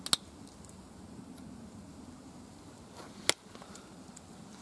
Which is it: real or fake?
real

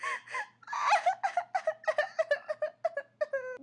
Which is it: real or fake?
real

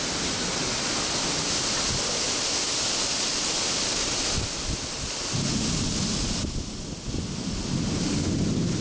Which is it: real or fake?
real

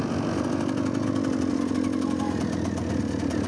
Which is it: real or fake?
real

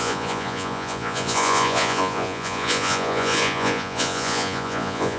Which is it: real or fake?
fake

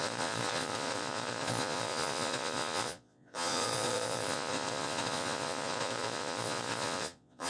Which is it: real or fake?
fake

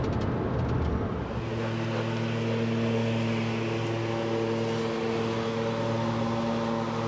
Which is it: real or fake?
real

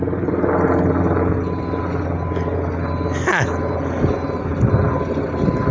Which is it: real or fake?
real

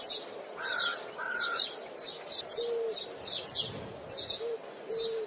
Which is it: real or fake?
real